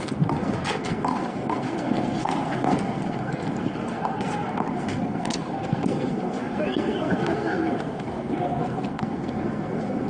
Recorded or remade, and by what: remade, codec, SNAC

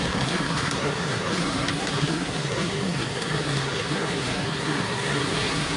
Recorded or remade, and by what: remade, codec, SNAC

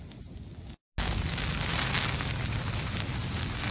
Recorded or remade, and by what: recorded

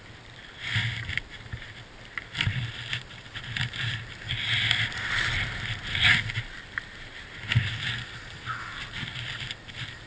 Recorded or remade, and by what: recorded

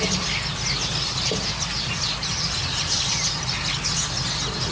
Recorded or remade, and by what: recorded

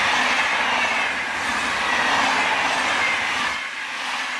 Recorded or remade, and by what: recorded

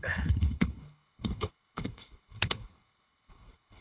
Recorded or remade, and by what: remade, codec, HILCodec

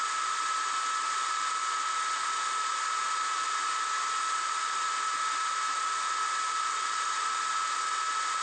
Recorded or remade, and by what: recorded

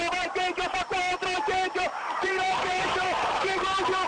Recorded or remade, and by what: remade, vocoder, BigVGAN v2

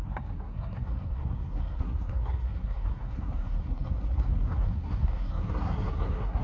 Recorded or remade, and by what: remade, codec, SNAC